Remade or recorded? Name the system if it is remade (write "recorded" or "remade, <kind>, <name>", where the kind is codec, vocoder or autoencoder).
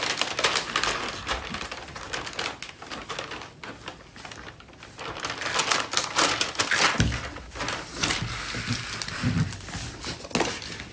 recorded